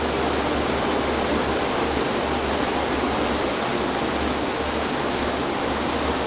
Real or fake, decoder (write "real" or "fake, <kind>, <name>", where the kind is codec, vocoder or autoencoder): real